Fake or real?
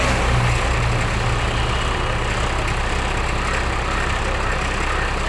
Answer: real